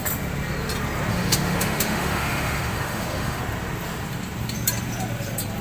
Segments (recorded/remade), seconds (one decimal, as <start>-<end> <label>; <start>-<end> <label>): 0.0-1.1 recorded; 1.1-3.4 remade; 3.4-5.6 recorded